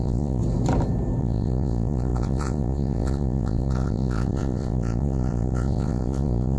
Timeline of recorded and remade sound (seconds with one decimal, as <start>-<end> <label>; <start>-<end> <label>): 0.0-0.4 remade; 0.4-1.2 recorded; 1.2-6.6 remade